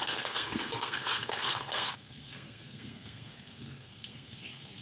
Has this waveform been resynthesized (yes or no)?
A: yes